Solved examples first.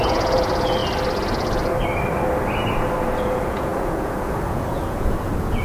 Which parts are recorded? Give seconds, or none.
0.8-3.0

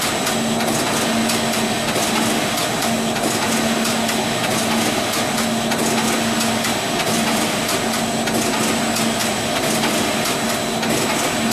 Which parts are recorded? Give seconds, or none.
0.0-11.5

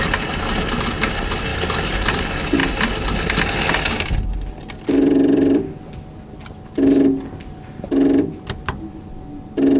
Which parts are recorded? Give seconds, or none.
0.0-1.5; 2.2-9.8

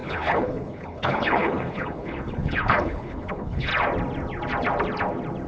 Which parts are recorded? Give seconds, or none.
3.7-5.5